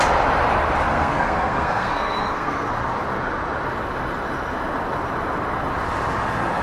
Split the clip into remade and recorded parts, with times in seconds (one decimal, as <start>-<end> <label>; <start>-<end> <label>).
0.0-0.9 recorded; 0.9-2.7 remade; 2.7-6.6 recorded

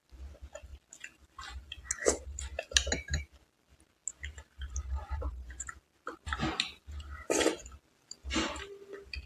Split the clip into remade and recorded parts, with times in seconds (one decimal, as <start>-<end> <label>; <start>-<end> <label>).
0.0-9.3 recorded

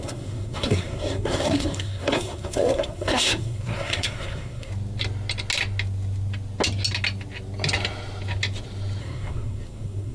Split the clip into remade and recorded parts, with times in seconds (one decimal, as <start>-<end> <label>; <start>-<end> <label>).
0.0-4.7 remade; 4.7-9.0 recorded; 9.0-10.1 remade

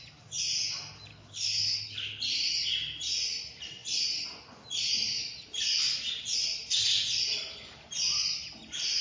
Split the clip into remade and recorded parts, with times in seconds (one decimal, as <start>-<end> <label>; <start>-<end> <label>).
0.0-1.1 recorded; 1.1-2.2 remade; 2.2-9.0 recorded

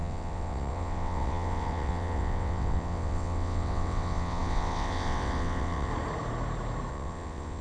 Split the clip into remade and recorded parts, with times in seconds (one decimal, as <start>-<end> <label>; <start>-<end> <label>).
0.0-5.9 remade; 5.9-6.9 recorded; 6.9-7.6 remade

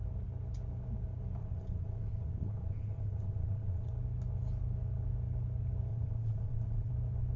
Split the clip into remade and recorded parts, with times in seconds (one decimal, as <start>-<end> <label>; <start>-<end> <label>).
0.0-1.4 recorded; 1.4-3.9 remade; 3.9-5.9 recorded; 5.9-6.9 remade; 6.9-7.4 recorded

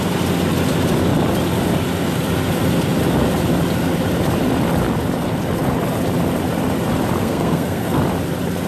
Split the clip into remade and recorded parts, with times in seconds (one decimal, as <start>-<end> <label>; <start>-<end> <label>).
0.0-7.2 recorded; 7.2-8.0 remade; 8.0-8.7 recorded

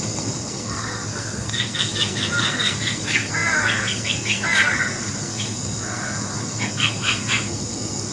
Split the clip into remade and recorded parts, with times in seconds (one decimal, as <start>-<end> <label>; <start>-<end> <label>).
0.0-8.1 remade